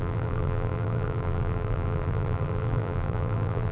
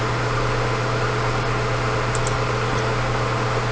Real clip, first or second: second